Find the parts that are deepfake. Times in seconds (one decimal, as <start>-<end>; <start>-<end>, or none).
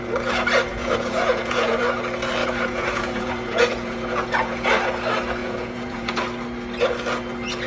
0.7-1.8; 2.4-4.7; 5.4-6.2